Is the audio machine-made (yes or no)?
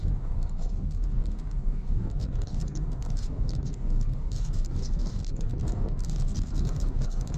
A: yes